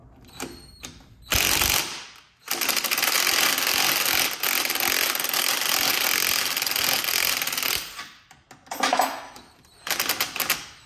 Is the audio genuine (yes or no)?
yes